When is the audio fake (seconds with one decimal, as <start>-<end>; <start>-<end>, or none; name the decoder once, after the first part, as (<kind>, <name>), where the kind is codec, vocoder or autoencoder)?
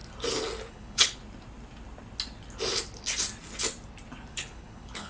0.7-1.2 (codec, HILCodec); 4.3-5.1